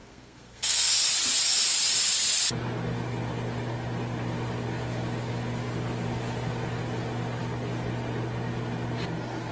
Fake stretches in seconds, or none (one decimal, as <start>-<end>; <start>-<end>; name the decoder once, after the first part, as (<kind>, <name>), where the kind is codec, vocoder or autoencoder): 0.0-0.9 (codec, SNAC)